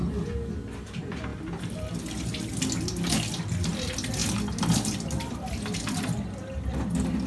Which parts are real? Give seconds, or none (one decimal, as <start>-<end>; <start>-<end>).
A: 0.0-7.3